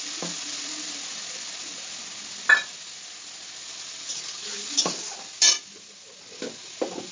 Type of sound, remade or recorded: recorded